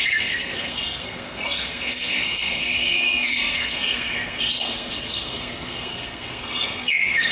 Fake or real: fake